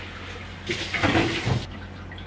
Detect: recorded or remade recorded